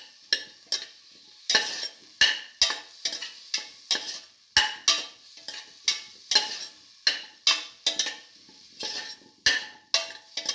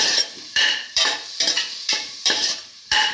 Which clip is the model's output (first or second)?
second